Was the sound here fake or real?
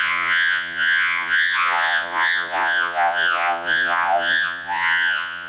fake